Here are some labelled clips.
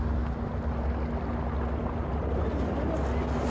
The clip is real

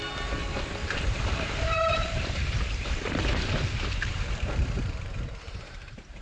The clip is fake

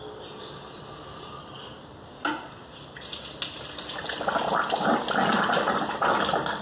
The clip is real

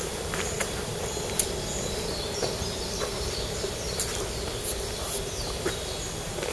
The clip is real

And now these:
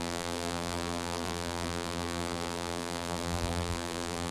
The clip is fake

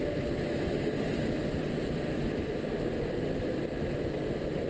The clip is real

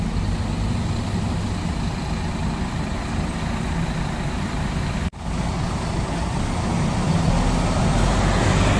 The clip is real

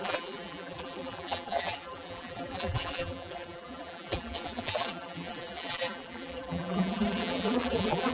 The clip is fake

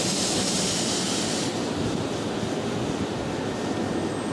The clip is real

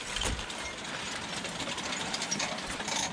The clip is real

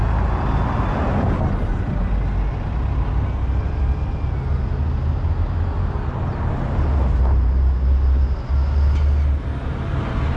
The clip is real